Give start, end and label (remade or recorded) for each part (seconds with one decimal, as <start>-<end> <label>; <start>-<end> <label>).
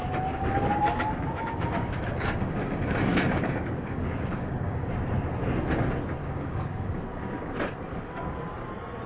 0.0-4.9 remade; 4.9-6.2 recorded; 6.2-7.0 remade; 7.0-9.1 recorded